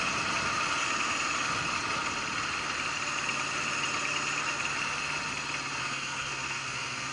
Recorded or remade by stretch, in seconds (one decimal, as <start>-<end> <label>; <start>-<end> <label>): 0.0-5.8 recorded; 5.8-7.1 remade